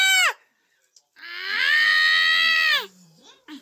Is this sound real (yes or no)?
yes